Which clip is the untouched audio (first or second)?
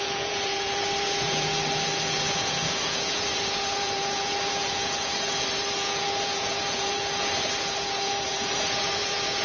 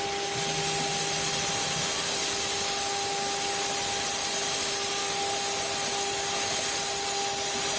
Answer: second